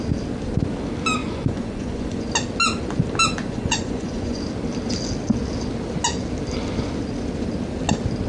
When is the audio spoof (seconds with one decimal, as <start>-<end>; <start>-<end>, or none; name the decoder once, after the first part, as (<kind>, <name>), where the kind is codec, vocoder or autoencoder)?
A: 1.2-2.3 (vocoder, Vocos); 3.4-4.4